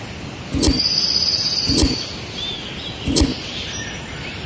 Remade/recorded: recorded